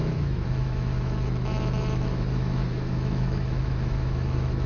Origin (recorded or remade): remade